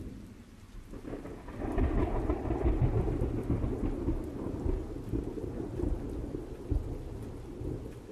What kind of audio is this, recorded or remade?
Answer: recorded